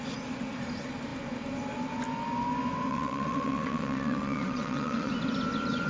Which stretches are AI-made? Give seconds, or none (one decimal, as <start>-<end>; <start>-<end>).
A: 2.9-5.1